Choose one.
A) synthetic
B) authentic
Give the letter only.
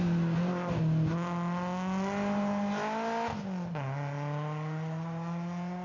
B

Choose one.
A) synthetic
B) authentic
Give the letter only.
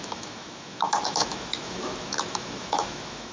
A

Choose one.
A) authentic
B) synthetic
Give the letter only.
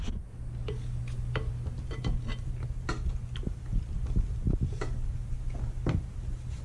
A